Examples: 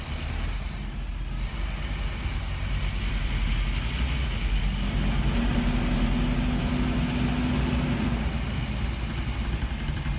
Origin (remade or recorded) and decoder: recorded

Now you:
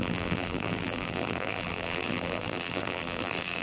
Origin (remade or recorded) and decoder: remade, vocoder, BigVGAN v2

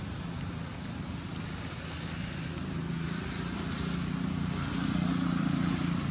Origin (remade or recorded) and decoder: recorded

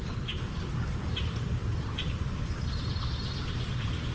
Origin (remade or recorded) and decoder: remade, vocoder, BigVGAN v2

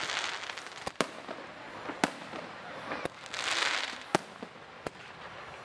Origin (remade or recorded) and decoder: recorded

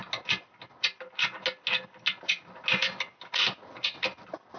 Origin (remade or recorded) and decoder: recorded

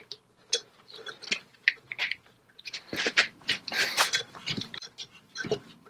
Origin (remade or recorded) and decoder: remade, vocoder, BigVGAN v2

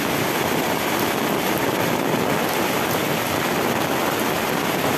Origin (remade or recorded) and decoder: recorded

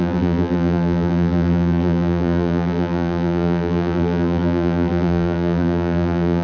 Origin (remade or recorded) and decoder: remade, vocoder, BigVGAN v2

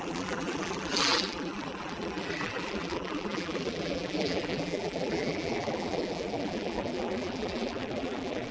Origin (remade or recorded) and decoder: remade, vocoder, BigVGAN v2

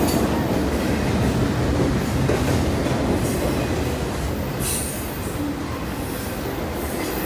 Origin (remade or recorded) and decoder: recorded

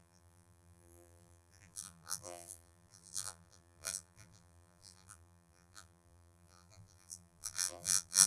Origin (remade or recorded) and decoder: remade, vocoder, BigVGAN v2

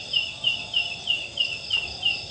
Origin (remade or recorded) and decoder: recorded